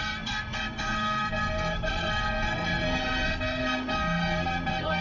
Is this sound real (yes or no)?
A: no